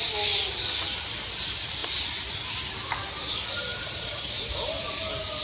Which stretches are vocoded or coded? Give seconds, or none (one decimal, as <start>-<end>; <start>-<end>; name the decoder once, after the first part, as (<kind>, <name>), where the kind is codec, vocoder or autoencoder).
none